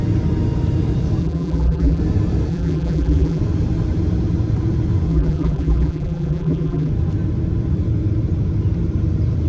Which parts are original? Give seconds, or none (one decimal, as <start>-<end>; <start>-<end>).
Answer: 0.0-1.2; 2.0-2.5; 3.4-5.1; 6.9-9.5

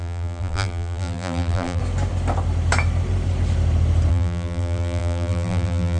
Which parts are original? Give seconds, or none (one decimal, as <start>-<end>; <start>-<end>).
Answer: 1.8-4.1